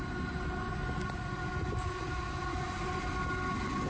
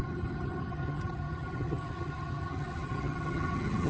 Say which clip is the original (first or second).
first